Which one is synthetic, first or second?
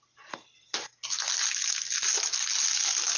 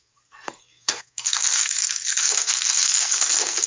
second